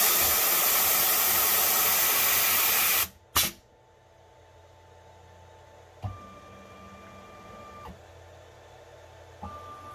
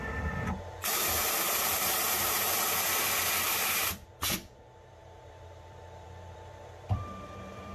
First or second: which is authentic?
first